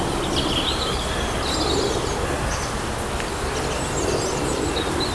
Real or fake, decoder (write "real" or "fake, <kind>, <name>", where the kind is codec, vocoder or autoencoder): real